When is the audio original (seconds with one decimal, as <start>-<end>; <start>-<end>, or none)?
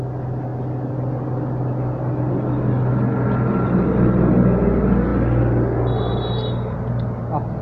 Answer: 0.0-7.6